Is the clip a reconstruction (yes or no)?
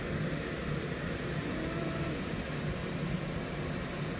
no